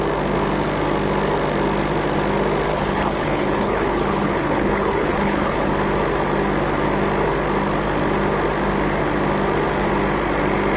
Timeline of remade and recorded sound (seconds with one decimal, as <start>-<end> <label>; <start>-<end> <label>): 0.0-2.7 recorded; 2.7-5.7 remade; 5.7-10.8 recorded